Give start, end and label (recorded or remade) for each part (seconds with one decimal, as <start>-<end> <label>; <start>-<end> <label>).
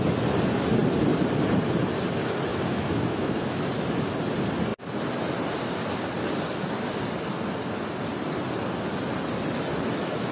0.0-2.5 recorded; 2.5-3.7 remade; 3.7-10.3 recorded